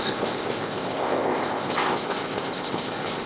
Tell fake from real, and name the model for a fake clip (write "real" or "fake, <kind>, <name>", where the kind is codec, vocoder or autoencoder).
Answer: fake, codec, ZipCodec